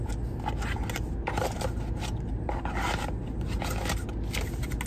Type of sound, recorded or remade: recorded